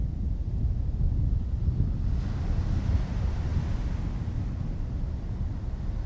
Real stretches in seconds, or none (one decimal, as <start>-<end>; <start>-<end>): 0.0-6.1